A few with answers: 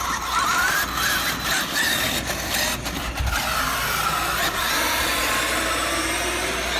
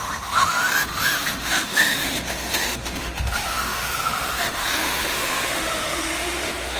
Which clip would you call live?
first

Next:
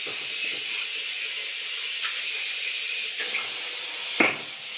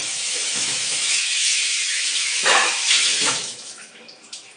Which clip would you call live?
first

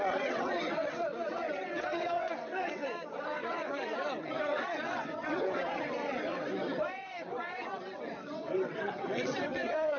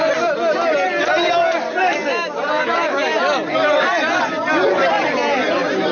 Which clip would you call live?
second